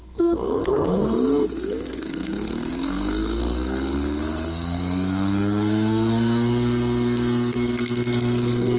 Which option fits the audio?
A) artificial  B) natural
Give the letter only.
A